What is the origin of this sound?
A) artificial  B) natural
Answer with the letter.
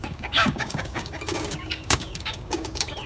A